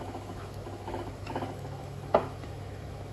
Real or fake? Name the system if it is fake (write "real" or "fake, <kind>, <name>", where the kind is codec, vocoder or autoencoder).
fake, autoencoder, DAC-VAE